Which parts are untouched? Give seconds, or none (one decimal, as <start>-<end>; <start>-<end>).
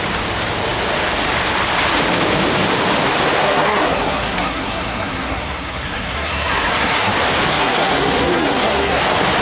0.0-3.4; 7.1-7.5; 9.0-9.4